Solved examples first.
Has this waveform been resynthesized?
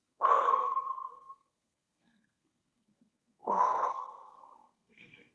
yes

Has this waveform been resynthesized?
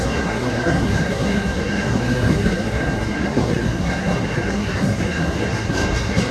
yes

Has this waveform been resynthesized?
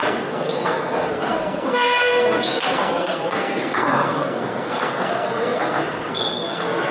yes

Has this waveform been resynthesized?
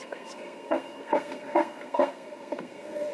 yes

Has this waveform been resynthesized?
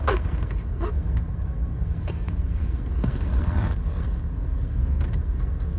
yes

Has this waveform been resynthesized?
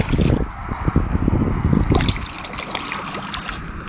no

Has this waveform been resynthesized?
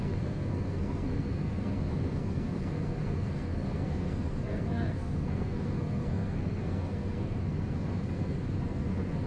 yes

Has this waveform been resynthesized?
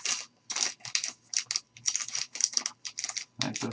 no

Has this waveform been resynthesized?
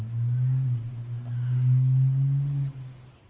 no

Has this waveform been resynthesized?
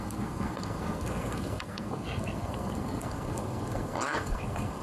yes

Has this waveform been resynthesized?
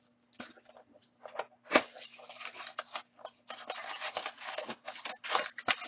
no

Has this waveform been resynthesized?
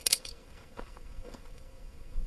yes